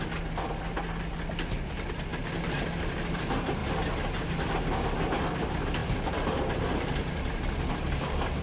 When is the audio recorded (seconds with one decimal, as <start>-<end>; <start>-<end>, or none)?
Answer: 0.0-8.4